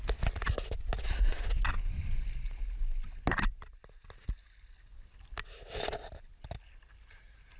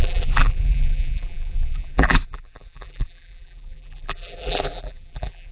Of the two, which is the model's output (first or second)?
second